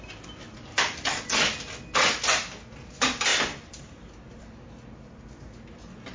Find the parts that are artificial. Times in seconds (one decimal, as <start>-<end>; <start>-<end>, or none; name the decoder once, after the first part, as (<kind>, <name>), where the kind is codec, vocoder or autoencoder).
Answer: none